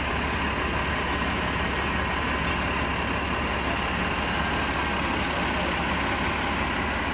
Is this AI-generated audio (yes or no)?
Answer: no